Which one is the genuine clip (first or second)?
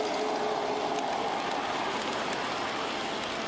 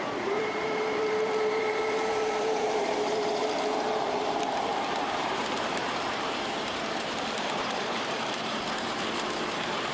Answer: first